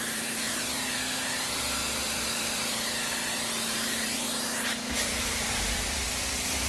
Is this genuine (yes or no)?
no